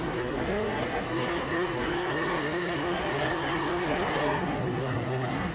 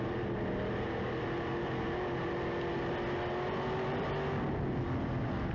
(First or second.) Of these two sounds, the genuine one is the second